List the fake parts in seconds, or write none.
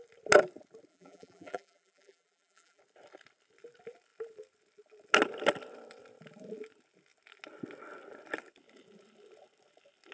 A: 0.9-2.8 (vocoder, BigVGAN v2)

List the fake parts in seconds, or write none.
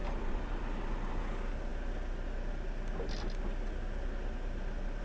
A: 0.0-1.1 (vocoder, BigVGAN v2)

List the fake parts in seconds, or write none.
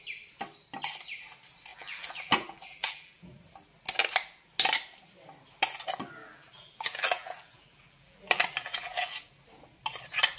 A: 1.7-3.4 (vocoder, BigVGAN v2); 6.2-9.3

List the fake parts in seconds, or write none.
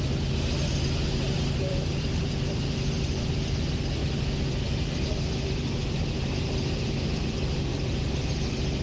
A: 1.7-3.3 (vocoder, BigVGAN v2); 4.0-4.7; 7.7-8.3